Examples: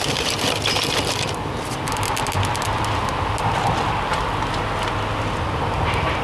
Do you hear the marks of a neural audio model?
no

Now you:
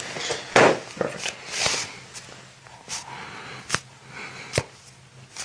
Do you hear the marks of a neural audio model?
no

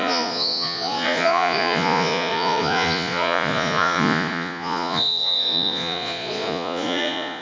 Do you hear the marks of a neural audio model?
yes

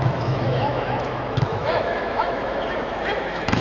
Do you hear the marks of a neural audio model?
yes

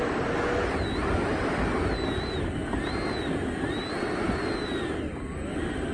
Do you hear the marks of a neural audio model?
no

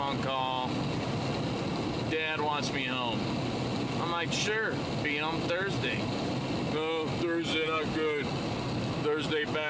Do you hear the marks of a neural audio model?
no